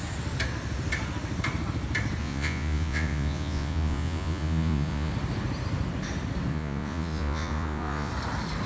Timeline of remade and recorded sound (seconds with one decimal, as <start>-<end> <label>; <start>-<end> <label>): 0.0-2.2 recorded; 2.2-5.1 remade; 5.1-6.5 recorded; 6.5-8.1 remade; 8.1-8.7 recorded